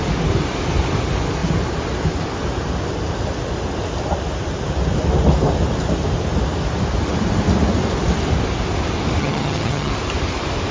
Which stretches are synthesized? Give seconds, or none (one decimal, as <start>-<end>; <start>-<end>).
9.2-9.9